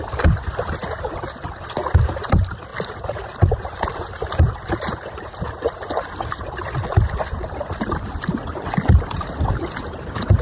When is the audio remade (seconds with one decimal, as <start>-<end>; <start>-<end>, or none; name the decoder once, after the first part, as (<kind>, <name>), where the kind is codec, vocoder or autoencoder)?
none

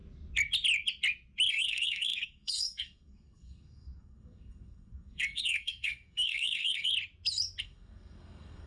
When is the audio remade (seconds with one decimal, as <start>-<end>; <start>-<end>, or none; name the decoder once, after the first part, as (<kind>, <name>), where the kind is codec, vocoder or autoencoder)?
1.5-6.9 (codec, SNAC); 7.6-8.7

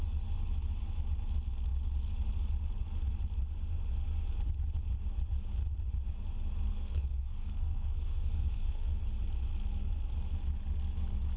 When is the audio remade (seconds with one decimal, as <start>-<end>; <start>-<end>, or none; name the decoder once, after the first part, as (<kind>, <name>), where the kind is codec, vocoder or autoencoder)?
6.7-9.0 (codec, SNAC)